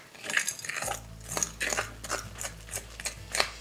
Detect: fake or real real